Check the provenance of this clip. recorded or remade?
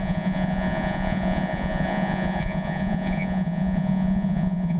remade